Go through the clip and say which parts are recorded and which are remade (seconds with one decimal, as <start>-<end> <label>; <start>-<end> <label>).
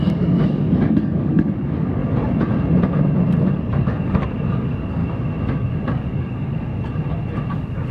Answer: 0.0-2.0 remade; 2.0-3.5 recorded; 3.5-5.0 remade; 5.0-5.5 recorded; 5.5-6.7 remade; 6.7-7.5 recorded; 7.5-7.9 remade